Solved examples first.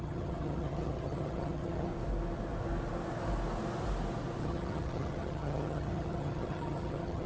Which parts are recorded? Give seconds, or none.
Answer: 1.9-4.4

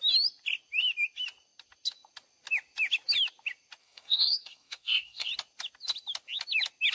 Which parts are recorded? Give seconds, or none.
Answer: 0.0-3.8; 5.3-6.9